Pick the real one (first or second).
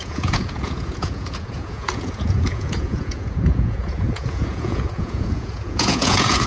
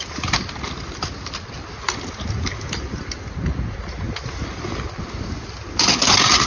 second